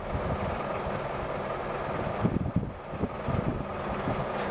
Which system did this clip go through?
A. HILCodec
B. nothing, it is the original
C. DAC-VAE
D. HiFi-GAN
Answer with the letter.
B